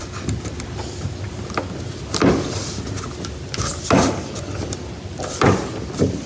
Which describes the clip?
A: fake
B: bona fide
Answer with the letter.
B